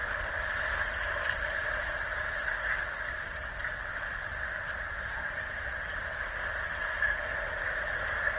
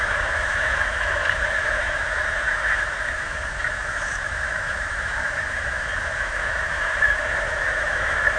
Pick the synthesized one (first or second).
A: second